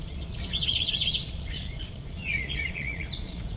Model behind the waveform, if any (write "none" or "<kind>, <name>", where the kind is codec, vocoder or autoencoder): vocoder, Vocos